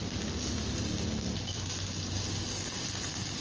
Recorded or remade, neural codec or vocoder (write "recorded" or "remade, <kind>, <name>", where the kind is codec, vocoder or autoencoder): recorded